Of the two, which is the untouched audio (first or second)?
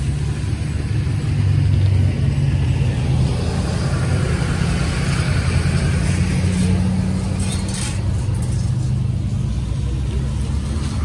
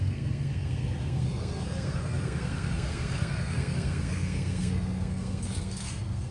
first